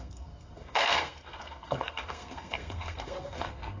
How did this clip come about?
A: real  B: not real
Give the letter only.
B